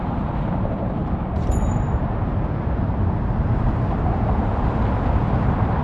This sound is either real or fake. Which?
fake